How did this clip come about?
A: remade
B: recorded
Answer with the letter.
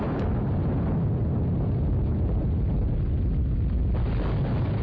B